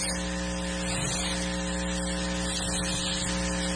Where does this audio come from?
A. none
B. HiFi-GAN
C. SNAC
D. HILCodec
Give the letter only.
A